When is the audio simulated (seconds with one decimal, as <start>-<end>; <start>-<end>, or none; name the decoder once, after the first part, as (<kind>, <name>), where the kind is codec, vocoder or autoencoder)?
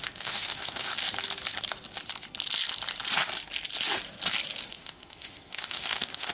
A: 0.0-0.9 (autoencoder, DAC-VAE); 4.7-6.3